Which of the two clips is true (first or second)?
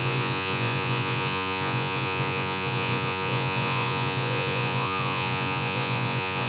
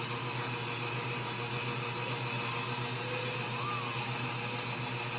second